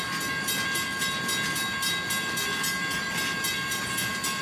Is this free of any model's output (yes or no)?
yes